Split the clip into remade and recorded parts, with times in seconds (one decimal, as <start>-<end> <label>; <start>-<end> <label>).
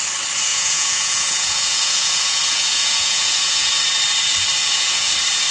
0.0-0.5 recorded; 0.5-3.8 remade; 3.8-4.6 recorded; 4.6-5.1 remade; 5.1-5.5 recorded